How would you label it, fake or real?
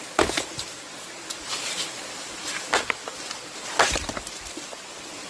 real